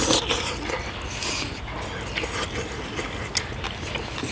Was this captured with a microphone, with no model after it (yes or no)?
yes